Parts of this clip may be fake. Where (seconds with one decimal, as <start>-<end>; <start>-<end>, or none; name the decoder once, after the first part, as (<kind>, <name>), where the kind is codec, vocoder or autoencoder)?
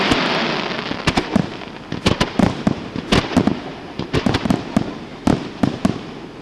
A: 3.5-4.5 (vocoder, BigVGAN v2)